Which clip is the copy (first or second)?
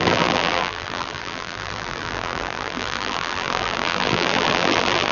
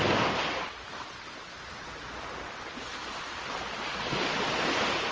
first